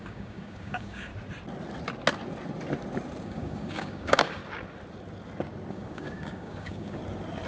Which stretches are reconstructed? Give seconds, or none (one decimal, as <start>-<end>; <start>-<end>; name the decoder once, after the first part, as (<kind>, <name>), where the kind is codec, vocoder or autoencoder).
0.0-1.1 (codec, DAC); 3.2-4.4; 5.7-7.0